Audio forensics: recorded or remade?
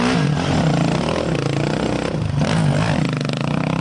recorded